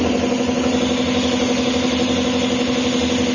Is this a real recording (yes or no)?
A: yes